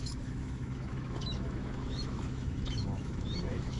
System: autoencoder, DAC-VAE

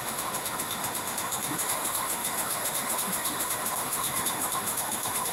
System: autoencoder, DAC-VAE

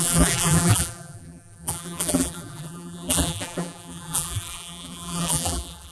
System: vocoder, BigVGAN v2